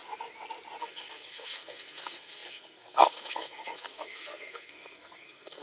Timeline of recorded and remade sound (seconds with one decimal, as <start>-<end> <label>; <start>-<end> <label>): 0.0-0.8 recorded; 0.8-5.6 remade